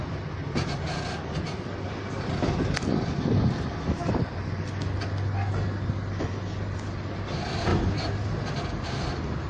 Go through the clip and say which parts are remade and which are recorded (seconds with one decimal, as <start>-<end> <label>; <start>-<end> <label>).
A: 0.0-9.5 recorded